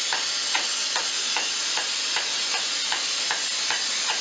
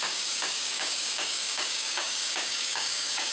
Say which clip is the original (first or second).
first